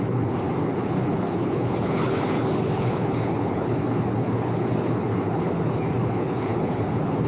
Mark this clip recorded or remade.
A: remade